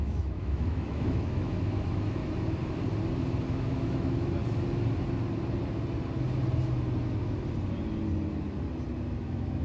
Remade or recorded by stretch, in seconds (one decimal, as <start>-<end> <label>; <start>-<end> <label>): 0.0-2.2 remade; 2.2-3.5 recorded; 3.5-4.4 remade; 4.4-9.2 recorded; 9.2-9.6 remade